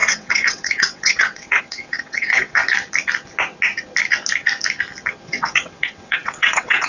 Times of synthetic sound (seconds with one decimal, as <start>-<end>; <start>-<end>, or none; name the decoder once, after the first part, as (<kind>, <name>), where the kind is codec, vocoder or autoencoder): 0.0-2.6 (vocoder, WaveNeXt); 5.2-6.9